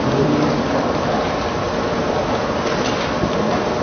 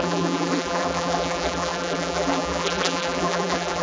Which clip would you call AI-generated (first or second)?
second